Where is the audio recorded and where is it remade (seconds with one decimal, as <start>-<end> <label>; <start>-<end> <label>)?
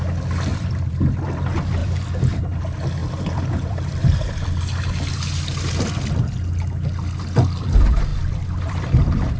0.0-0.5 recorded; 0.5-1.2 remade; 1.2-1.8 recorded; 1.8-2.4 remade; 2.4-3.0 recorded; 3.0-4.6 remade; 4.6-8.1 recorded; 8.1-9.4 remade